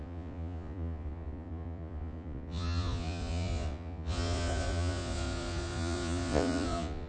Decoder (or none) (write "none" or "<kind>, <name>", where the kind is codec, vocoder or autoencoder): vocoder, Vocos